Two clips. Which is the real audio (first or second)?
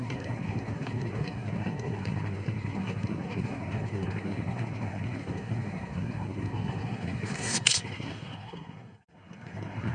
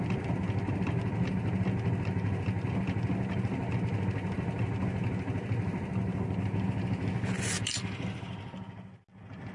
second